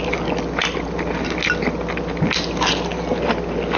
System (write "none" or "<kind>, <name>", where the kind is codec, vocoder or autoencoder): none